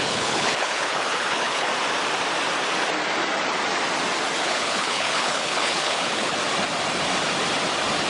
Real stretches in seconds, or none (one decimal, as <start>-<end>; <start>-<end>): 1.7-4.4; 6.4-8.1